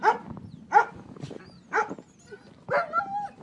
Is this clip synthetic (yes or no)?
no